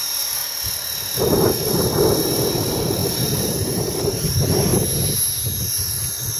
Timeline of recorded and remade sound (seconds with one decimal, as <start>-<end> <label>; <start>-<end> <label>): 0.0-0.4 remade; 0.4-2.6 recorded; 2.6-4.7 remade; 4.7-6.4 recorded